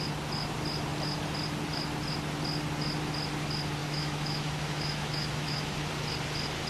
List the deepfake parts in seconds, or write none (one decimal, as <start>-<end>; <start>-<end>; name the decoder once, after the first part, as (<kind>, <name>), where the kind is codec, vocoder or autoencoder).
3.8-5.9 (autoencoder, DAC-VAE)

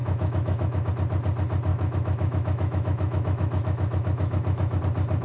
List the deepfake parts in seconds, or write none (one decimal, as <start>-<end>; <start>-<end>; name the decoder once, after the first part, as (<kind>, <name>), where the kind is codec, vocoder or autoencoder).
0.0-0.9 (autoencoder, DAC-VAE); 1.7-4.8